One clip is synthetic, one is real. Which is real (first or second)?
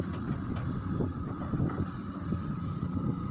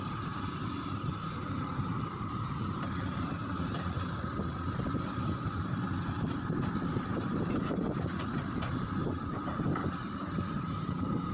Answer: first